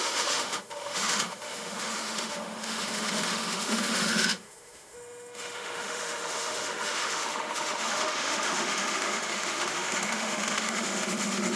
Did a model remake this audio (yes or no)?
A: yes